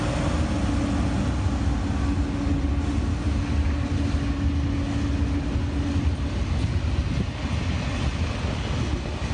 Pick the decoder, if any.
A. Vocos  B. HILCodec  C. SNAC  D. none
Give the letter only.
D